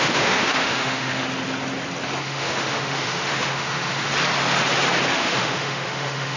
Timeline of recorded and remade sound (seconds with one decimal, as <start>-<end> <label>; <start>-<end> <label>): 0.0-1.2 remade; 1.2-2.2 recorded; 2.2-4.1 remade; 4.1-5.1 recorded; 5.1-6.4 remade

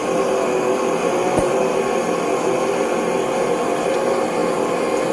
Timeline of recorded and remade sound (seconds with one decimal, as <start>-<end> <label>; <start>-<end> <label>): 0.0-5.1 recorded

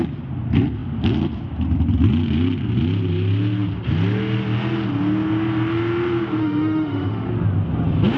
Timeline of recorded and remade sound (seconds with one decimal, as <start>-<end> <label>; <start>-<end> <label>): 0.0-6.4 recorded; 6.4-7.3 remade; 7.3-8.2 recorded

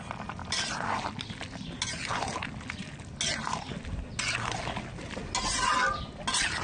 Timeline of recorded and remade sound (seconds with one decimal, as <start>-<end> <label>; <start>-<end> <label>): 0.0-6.6 recorded